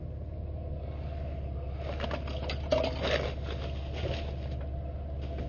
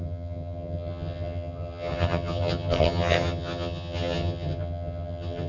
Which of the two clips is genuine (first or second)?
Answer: first